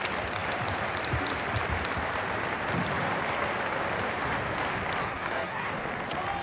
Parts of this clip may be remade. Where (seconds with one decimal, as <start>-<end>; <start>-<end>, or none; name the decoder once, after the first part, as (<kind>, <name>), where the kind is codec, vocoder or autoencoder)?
5.0-5.7 (codec, SNAC)